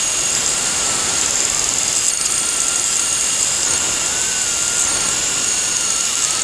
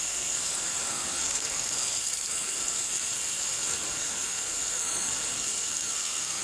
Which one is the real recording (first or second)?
first